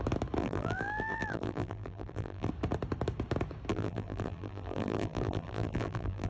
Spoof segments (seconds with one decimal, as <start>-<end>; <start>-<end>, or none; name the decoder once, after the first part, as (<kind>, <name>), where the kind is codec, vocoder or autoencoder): 0.4-2.5 (vocoder, BigVGAN v2); 3.7-6.3